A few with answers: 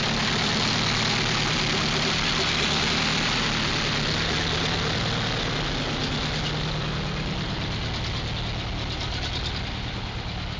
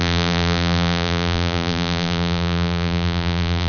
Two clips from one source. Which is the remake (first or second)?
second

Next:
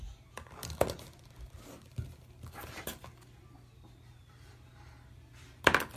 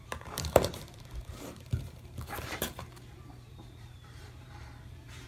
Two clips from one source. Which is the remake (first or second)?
second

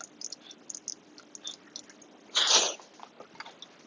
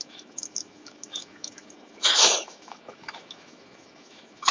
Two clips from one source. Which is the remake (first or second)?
second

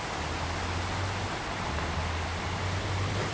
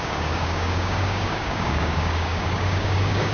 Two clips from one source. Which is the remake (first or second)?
second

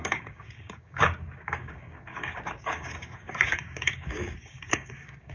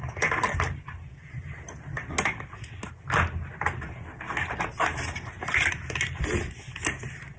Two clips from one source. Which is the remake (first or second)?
first